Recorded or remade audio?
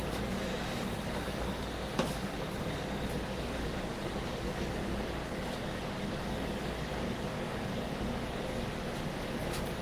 remade